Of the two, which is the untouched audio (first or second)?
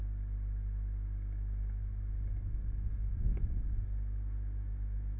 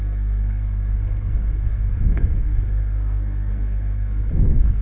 first